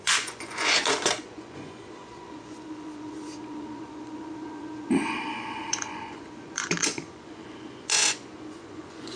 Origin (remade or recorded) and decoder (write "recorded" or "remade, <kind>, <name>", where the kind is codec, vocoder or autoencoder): remade, vocoder, Vocos